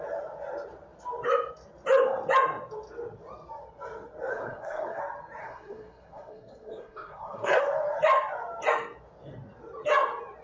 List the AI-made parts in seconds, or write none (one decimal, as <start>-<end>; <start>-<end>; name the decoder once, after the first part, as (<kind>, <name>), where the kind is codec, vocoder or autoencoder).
4.3-5.0 (codec, SNAC); 5.4-7.6